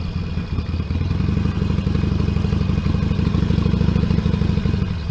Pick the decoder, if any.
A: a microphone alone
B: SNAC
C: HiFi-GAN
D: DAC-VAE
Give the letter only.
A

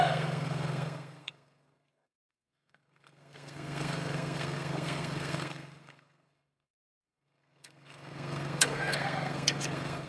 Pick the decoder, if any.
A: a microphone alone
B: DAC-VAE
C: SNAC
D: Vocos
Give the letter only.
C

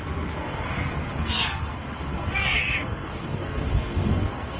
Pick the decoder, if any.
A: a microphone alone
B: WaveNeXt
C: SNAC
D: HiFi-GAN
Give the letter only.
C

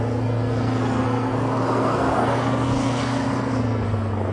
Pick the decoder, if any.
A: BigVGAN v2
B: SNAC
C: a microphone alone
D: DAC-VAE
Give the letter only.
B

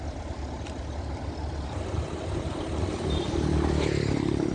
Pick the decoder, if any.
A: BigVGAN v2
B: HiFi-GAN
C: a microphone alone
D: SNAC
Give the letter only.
C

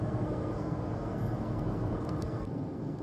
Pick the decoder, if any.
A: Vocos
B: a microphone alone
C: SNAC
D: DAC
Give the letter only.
C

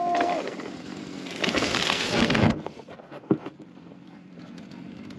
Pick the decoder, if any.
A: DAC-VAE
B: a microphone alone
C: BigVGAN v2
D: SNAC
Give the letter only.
D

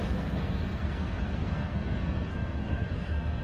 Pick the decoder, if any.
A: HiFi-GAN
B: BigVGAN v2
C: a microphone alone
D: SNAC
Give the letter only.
D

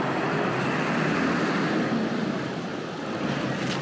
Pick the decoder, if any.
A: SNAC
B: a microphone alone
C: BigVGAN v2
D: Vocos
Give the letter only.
B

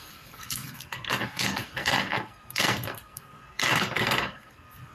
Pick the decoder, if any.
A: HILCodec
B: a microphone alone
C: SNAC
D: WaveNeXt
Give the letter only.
C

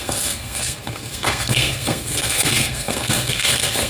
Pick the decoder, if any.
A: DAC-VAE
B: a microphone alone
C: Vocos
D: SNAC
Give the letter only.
D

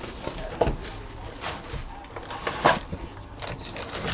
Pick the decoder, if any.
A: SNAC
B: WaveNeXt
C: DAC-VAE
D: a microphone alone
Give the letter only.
D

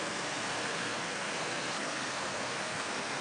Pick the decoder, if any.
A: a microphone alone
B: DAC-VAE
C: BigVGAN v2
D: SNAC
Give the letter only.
D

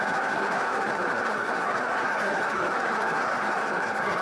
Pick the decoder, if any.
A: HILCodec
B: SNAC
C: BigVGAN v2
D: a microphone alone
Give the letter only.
B